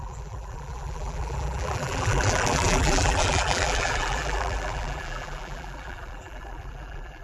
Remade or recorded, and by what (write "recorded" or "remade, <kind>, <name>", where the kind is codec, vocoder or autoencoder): remade, vocoder, BigVGAN v2